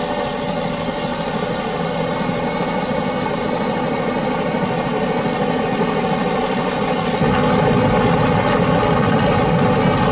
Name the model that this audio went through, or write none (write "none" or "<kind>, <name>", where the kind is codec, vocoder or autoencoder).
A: none